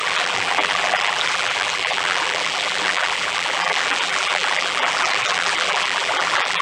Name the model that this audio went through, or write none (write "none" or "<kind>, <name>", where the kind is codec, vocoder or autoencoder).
vocoder, BigVGAN v2